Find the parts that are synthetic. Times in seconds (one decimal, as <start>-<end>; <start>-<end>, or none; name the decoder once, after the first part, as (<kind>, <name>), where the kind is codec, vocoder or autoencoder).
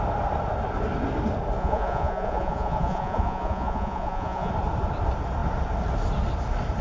1.6-4.5 (vocoder, Vocos)